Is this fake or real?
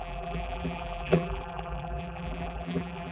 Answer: fake